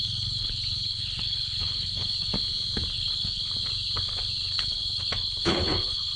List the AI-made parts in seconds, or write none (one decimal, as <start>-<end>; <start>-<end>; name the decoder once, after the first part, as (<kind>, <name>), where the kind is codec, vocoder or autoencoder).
0.0-2.3 (codec, HILCodec); 2.9-3.4; 4.5-6.2

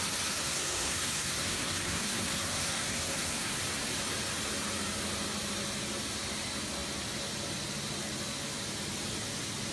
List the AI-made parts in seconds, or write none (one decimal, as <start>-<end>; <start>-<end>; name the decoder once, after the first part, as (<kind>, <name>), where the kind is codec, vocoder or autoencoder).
0.4-3.6 (codec, SNAC)

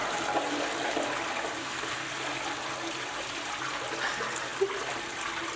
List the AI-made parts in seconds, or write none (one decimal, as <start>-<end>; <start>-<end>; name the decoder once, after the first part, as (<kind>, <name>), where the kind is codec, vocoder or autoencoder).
1.6-2.1 (codec, SNAC)

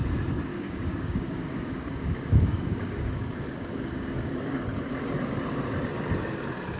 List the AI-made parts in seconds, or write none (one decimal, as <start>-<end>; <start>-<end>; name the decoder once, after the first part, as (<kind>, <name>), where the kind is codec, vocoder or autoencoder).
0.5-4.6 (codec, DAC)

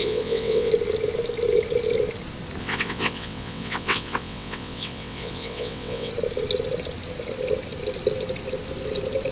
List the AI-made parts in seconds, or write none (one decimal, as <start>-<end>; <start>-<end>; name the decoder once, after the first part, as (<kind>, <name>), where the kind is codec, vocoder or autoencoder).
0.0-0.7 (vocoder, WaveNeXt); 2.6-6.1

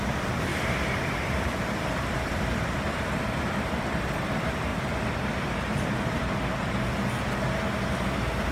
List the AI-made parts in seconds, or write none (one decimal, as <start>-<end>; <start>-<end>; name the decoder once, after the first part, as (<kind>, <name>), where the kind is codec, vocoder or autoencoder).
0.0-4.7 (vocoder, BigVGAN v2)

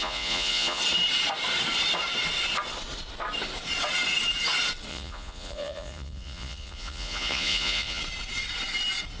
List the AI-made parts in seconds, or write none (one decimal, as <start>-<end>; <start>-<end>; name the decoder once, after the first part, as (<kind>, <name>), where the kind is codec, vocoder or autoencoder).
0.0-0.8 (vocoder, Vocos); 4.9-8.0

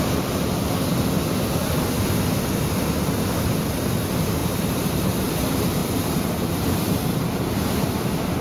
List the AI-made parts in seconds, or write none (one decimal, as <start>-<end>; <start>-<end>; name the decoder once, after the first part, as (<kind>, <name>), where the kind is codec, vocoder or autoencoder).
4.4-5.3 (vocoder, BigVGAN v2); 5.8-7.3